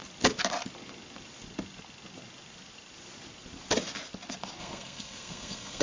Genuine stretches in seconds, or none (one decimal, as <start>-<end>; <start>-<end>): 0.0-4.6